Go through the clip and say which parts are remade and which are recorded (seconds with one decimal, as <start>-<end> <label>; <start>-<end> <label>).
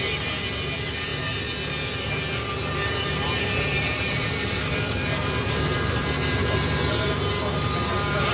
0.0-1.1 remade; 1.1-2.1 recorded; 2.1-6.8 remade; 6.8-8.3 recorded